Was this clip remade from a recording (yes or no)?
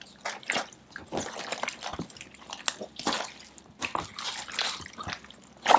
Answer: no